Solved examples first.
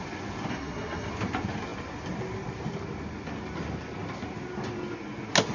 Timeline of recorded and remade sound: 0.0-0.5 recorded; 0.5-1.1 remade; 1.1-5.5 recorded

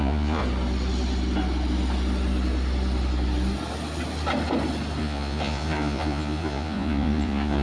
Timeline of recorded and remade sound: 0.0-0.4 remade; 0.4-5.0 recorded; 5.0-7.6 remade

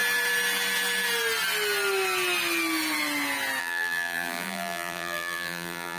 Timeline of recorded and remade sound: 0.0-3.6 recorded; 3.6-6.0 remade

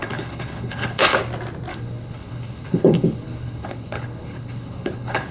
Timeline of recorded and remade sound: 0.0-1.2 remade; 1.2-1.7 recorded; 1.7-5.3 remade

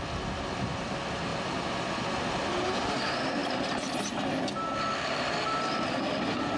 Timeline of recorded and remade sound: 0.0-6.6 recorded

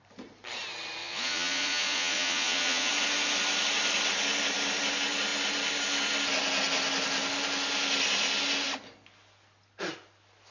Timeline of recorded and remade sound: 0.0-1.0 recorded; 1.0-2.9 remade; 2.9-10.5 recorded

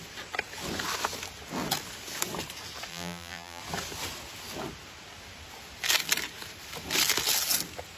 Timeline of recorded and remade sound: 0.0-2.9 recorded; 2.9-3.6 remade; 3.6-8.0 recorded